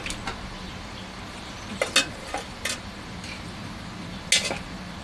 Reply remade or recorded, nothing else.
recorded